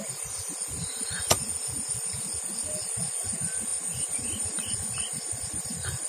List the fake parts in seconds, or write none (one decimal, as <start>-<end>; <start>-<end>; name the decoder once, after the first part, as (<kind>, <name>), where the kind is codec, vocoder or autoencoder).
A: none